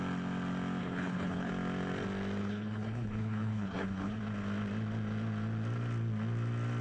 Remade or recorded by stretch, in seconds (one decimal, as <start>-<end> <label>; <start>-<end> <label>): 0.0-0.8 recorded; 0.8-1.5 remade; 1.5-2.4 recorded; 2.4-4.2 remade; 4.2-6.8 recorded